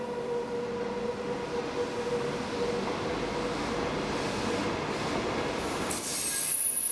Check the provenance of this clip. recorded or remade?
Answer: recorded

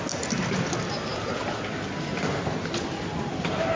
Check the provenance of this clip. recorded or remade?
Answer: recorded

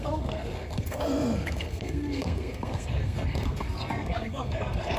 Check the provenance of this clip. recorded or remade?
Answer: remade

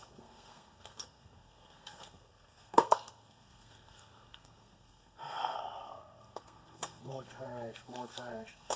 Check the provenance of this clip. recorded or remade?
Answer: remade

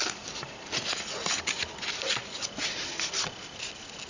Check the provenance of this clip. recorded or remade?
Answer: recorded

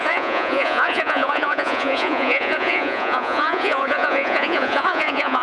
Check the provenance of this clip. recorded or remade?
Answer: remade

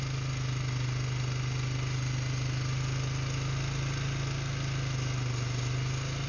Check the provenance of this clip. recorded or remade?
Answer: recorded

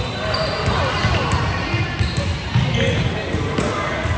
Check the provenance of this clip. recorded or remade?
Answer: recorded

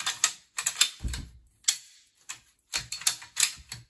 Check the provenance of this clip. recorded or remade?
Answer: recorded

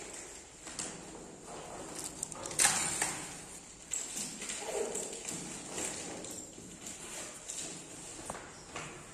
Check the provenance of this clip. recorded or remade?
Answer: recorded